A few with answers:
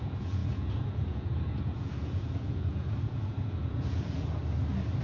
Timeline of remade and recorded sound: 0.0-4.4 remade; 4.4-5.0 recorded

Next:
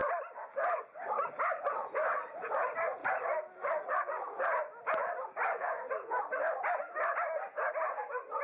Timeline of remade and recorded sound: 0.0-1.3 remade; 1.3-3.0 recorded; 3.0-4.8 remade; 4.8-8.4 recorded

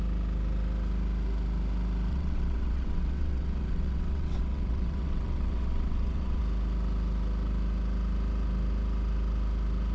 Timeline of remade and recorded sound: 0.0-2.1 recorded; 2.1-6.4 remade; 6.4-9.9 recorded

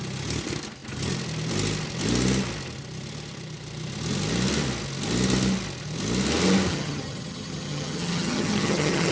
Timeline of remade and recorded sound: 0.0-6.7 recorded; 6.7-9.1 remade

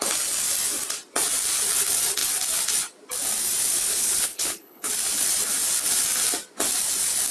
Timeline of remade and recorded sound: 0.0-3.7 recorded; 3.7-4.9 remade; 4.9-7.3 recorded

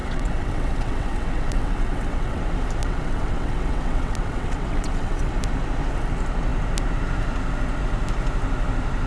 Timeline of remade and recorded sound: 0.0-2.4 remade; 2.4-2.8 recorded; 2.8-5.3 remade; 5.3-9.1 recorded

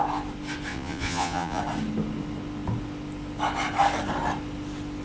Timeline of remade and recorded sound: 0.0-0.7 recorded; 0.7-1.6 remade; 1.6-5.0 recorded

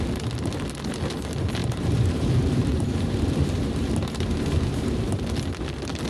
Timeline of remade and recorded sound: 0.0-1.6 recorded; 1.6-5.2 remade; 5.2-6.1 recorded